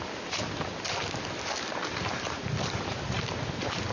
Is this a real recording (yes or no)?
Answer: yes